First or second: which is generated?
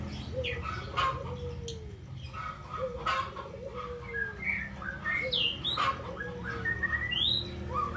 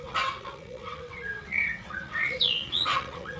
second